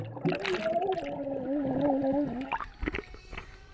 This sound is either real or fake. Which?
real